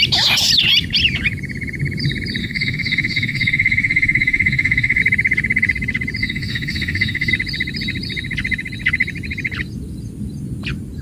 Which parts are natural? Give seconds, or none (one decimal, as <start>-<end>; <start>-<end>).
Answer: 0.0-2.4; 5.0-6.2; 7.3-11.0

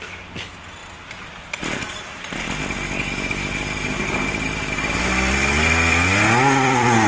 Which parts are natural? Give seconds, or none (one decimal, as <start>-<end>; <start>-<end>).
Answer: 0.0-7.1

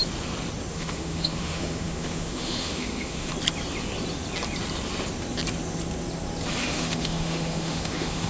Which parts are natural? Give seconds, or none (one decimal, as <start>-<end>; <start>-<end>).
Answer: 0.0-0.7; 3.3-6.6

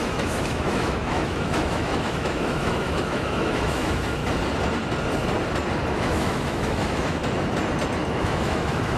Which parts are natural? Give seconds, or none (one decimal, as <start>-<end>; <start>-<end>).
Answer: 4.2-5.9; 7.2-8.1